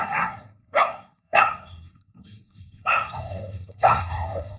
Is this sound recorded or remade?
remade